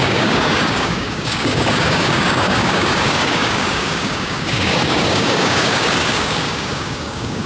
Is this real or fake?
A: fake